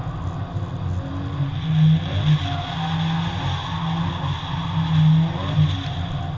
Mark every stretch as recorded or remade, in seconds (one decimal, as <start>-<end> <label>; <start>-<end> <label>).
0.0-6.4 recorded